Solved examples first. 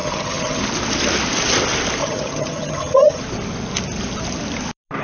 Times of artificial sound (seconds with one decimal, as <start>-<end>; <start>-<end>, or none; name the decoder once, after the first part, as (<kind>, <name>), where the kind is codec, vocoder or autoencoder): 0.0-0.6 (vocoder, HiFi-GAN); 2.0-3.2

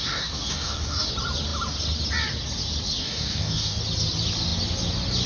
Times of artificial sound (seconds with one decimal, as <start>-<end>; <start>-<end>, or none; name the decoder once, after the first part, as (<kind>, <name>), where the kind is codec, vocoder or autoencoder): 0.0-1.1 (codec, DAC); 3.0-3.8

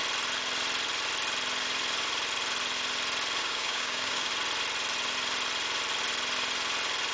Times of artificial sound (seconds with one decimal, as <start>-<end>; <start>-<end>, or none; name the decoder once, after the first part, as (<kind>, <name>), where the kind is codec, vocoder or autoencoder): 3.4-4.3 (codec, DAC)

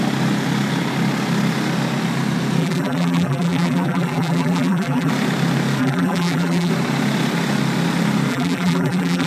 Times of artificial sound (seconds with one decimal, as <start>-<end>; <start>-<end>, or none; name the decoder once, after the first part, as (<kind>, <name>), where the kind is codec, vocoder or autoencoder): 2.6-5.1 (vocoder, BigVGAN v2); 5.8-6.7; 8.3-9.3

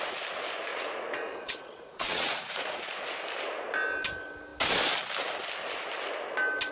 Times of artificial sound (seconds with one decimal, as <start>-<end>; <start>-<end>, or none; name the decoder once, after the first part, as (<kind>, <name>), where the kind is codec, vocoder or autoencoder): 0.7-3.0 (vocoder, Vocos)

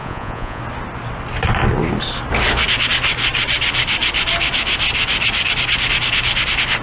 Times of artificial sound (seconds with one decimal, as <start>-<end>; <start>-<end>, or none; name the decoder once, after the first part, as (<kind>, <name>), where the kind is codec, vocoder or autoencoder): 0.0-0.6 (vocoder, Vocos)

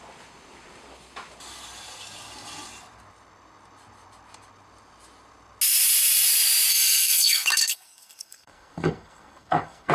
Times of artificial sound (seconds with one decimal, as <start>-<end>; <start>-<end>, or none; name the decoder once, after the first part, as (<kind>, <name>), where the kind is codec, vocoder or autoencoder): 6.7-9.9 (codec, SNAC)

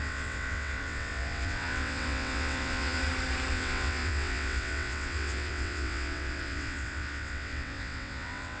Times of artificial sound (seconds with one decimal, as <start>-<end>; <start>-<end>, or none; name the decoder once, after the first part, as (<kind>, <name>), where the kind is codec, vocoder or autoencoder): 0.0-3.0 (vocoder, WaveNeXt); 3.5-8.6